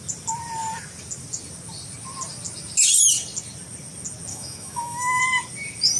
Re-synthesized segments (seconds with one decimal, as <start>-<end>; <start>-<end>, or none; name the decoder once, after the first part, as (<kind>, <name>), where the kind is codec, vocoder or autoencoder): 4.3-5.2 (autoencoder, DAC-VAE)